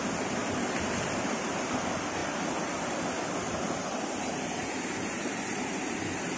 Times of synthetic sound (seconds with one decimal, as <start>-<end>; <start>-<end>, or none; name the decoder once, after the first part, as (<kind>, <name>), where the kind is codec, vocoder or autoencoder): 0.4-1.8 (vocoder, BigVGAN v2); 3.8-6.4